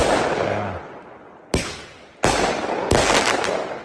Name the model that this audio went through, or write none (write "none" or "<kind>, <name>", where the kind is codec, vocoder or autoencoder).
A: none